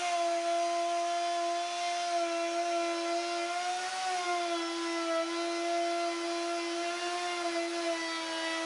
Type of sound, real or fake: real